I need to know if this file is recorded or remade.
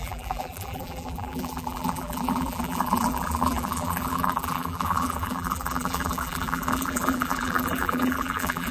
remade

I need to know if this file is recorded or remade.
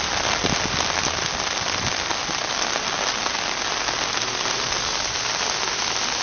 recorded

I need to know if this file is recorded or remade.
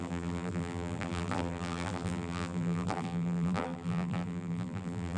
remade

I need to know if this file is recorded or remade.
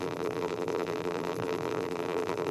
remade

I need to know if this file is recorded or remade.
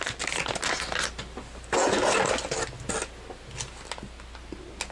recorded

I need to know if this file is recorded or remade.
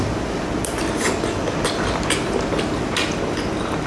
recorded